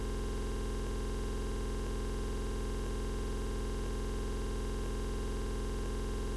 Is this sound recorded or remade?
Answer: recorded